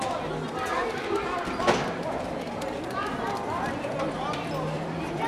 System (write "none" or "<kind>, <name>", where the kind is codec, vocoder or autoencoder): none